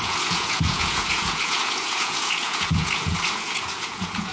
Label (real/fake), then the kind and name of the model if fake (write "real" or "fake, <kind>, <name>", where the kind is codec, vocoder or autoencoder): fake, vocoder, Vocos